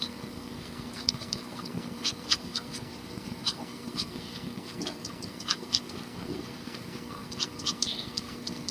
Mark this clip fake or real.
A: fake